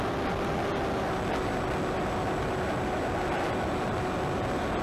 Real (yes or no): yes